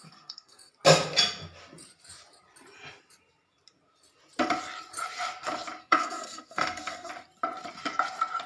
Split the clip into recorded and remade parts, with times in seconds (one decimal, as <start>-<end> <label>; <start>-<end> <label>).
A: 0.0-0.7 remade; 0.7-5.8 recorded; 5.8-7.1 remade; 7.1-8.5 recorded